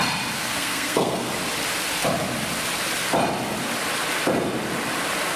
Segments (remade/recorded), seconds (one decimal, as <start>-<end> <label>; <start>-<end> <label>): 0.0-0.4 recorded; 0.4-1.3 remade; 1.3-5.4 recorded

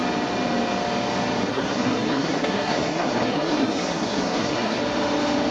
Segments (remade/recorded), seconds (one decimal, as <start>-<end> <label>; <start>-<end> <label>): 0.0-1.5 recorded; 1.5-4.8 remade; 4.8-5.5 recorded

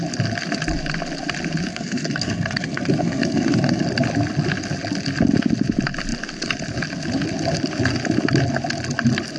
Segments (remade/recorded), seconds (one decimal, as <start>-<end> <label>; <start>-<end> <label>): 0.0-1.7 recorded; 1.7-3.8 remade; 3.8-9.4 recorded

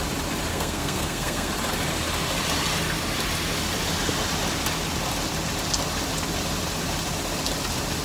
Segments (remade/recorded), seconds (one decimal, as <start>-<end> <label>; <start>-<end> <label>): 0.0-0.5 recorded; 0.5-1.5 remade; 1.5-8.0 recorded

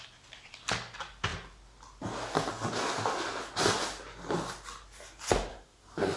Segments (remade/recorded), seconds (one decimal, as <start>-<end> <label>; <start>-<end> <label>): 0.0-5.5 recorded; 5.5-6.2 remade